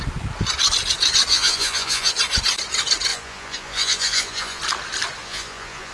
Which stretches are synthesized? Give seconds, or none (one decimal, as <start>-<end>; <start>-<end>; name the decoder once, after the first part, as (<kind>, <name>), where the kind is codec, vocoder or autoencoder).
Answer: 1.3-2.1 (vocoder, Vocos); 3.1-4.6; 5.2-5.9